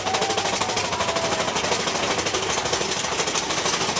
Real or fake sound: real